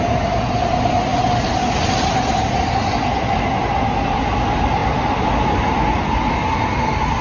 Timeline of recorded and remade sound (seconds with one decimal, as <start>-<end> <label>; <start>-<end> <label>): 0.0-7.2 recorded

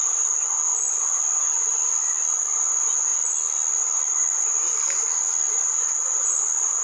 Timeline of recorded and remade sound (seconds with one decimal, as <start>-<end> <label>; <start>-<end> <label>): 0.0-6.8 recorded

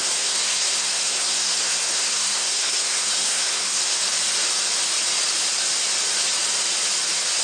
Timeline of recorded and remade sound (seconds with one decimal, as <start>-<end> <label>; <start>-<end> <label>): 0.0-4.0 remade; 4.0-7.4 recorded